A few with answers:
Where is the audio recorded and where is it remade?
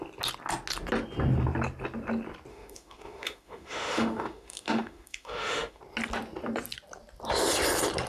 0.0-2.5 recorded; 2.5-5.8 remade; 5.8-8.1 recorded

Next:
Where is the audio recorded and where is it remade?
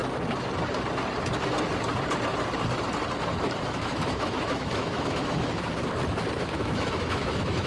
0.0-3.7 recorded; 3.7-5.8 remade; 5.8-6.4 recorded; 6.4-7.7 remade